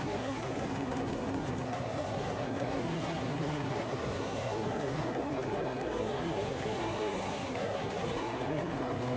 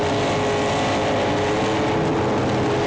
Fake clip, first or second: first